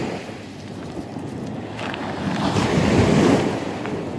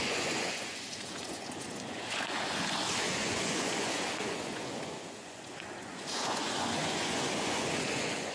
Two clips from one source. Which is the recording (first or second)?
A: first